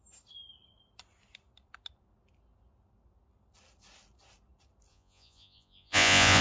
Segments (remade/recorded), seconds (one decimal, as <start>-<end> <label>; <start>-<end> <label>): 0.0-4.9 recorded; 4.9-6.4 remade